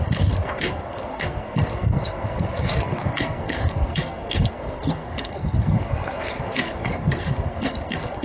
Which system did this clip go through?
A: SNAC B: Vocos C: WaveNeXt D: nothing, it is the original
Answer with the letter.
A